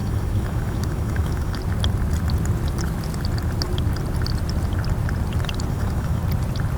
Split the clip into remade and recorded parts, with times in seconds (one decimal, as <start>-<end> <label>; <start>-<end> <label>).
0.0-1.6 remade; 1.6-5.7 recorded; 5.7-6.2 remade; 6.2-6.8 recorded